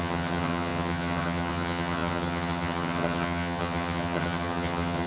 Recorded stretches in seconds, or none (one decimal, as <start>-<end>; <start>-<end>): none